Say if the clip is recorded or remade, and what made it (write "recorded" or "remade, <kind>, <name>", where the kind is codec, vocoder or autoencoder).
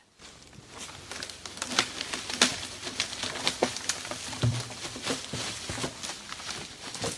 remade, vocoder, BigVGAN v2